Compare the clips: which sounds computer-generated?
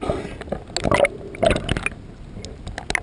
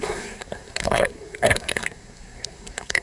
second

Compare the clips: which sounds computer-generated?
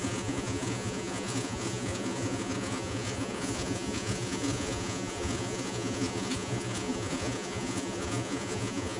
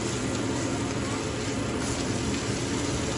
first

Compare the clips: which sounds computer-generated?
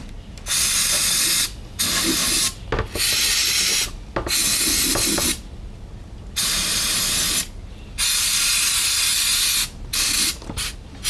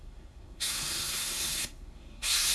second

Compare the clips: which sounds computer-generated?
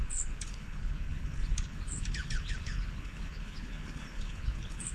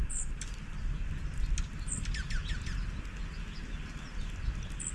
first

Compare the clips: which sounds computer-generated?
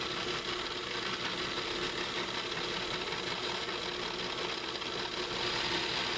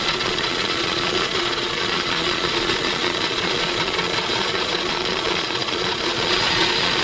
second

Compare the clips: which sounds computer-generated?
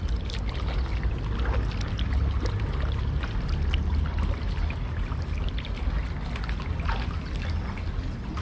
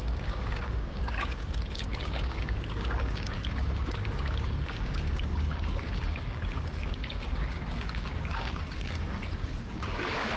second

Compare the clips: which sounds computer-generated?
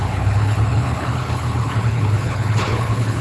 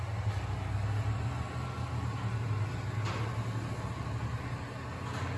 first